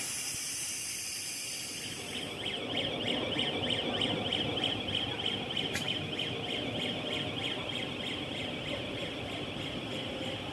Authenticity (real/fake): real